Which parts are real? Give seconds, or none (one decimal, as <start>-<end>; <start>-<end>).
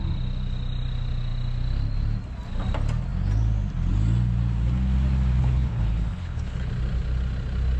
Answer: 0.0-5.4; 6.7-7.8